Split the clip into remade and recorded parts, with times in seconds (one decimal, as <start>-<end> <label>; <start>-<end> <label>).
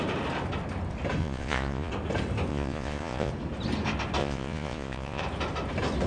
0.0-1.2 recorded; 1.2-1.9 remade; 1.9-2.5 recorded; 2.5-3.3 remade; 3.3-4.2 recorded; 4.2-5.2 remade; 5.2-6.1 recorded